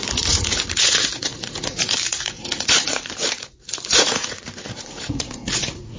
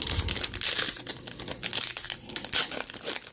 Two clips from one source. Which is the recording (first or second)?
second